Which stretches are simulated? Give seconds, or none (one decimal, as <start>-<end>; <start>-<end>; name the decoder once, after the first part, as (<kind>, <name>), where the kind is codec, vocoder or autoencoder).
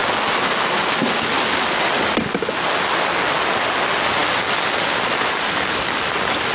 none